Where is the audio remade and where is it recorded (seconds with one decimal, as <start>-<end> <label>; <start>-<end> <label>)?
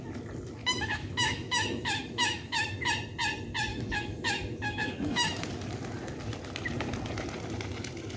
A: 0.0-0.6 recorded; 0.6-2.9 remade; 2.9-3.7 recorded; 3.7-5.5 remade; 5.5-8.2 recorded